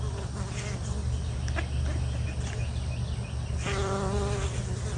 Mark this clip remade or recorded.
recorded